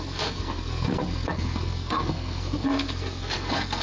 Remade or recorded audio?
remade